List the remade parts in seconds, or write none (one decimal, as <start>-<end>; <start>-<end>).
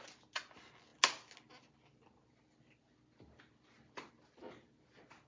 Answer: none